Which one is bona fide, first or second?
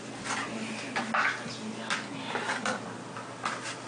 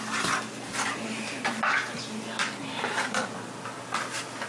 first